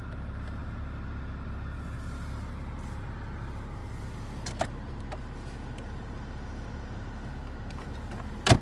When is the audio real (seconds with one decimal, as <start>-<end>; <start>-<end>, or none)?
none